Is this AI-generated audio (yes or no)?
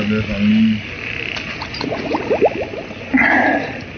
no